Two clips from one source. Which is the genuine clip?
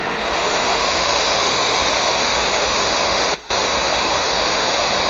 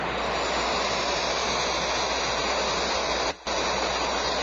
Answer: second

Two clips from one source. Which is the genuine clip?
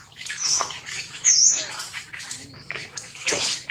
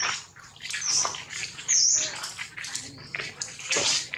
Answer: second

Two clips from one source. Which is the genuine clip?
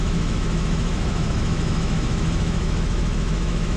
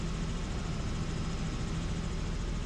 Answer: second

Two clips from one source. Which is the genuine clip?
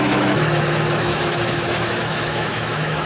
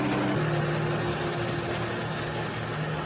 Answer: second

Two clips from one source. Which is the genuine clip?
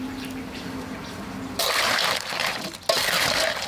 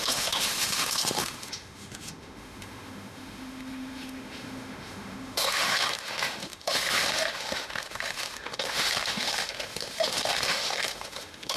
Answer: first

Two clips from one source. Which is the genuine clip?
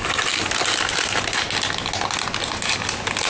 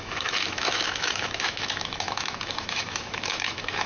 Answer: first